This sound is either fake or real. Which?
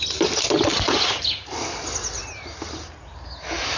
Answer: real